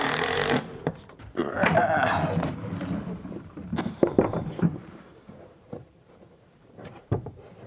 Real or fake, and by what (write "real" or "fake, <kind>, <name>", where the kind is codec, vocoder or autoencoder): fake, vocoder, BigVGAN v2